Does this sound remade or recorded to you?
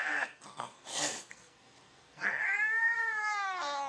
remade